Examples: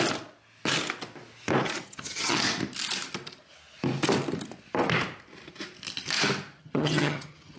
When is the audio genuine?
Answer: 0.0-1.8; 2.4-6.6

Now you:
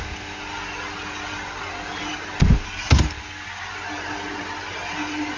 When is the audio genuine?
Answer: 0.0-5.4

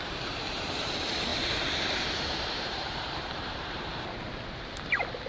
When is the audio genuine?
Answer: 3.9-5.3

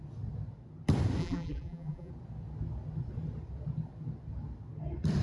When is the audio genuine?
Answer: 0.0-1.2; 2.1-5.2

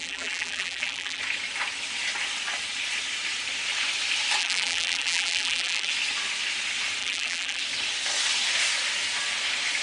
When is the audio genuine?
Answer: 1.2-4.4; 5.9-7.0; 7.6-9.8

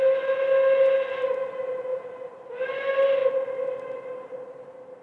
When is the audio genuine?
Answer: 0.0-1.9; 2.5-5.0